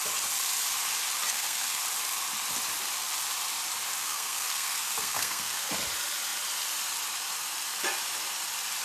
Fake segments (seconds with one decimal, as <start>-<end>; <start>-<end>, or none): 1.3-1.8; 4.0-5.7